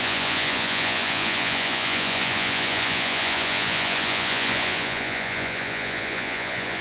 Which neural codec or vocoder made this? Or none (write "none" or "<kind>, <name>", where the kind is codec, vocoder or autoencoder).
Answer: vocoder, Vocos